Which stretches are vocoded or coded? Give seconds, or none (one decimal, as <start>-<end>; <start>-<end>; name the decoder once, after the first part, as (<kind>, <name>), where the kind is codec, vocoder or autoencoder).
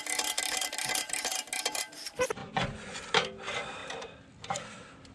2.4-3.0 (vocoder, Vocos)